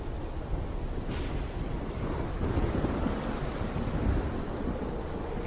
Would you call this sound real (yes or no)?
yes